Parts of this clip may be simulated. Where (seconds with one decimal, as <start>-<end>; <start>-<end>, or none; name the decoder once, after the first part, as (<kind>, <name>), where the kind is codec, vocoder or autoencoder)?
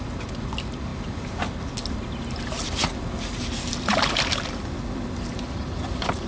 none